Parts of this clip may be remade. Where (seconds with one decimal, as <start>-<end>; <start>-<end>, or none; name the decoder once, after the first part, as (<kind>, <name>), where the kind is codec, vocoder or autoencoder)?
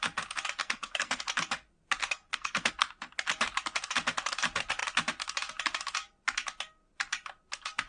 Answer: 0.6-1.2 (codec, SNAC); 2.0-2.7